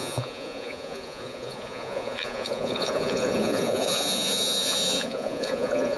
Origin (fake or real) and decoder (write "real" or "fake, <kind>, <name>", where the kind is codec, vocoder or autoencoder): fake, vocoder, Vocos